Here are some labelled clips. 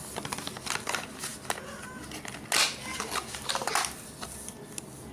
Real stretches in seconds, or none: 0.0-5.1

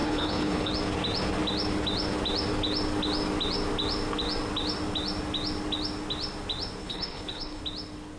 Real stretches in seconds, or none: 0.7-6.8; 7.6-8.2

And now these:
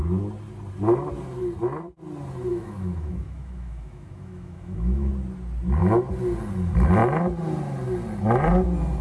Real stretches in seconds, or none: 0.0-2.5; 5.1-9.0

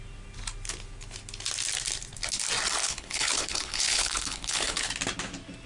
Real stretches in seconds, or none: 0.0-2.8; 4.9-5.7